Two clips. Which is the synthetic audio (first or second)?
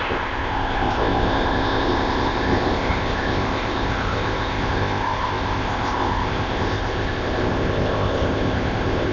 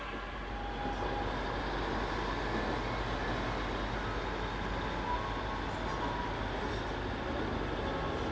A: first